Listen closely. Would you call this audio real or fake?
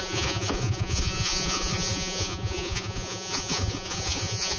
fake